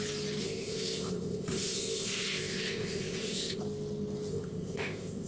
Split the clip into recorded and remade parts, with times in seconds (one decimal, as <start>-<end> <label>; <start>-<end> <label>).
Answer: 0.0-0.4 recorded; 0.4-3.6 remade; 3.6-4.3 recorded; 4.3-5.3 remade